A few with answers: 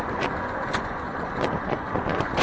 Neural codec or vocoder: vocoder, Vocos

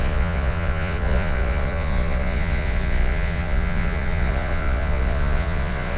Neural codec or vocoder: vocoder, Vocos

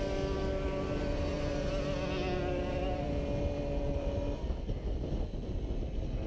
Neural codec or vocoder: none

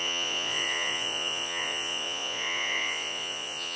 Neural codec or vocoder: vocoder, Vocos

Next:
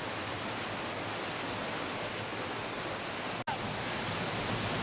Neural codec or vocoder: none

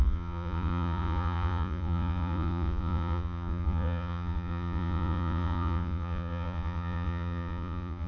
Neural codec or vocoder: vocoder, Vocos